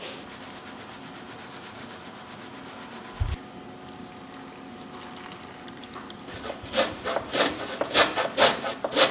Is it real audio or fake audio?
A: real